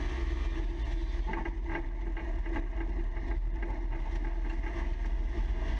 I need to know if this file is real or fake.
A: real